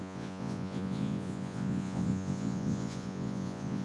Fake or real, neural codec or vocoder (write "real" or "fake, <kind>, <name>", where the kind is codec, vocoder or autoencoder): fake, vocoder, Vocos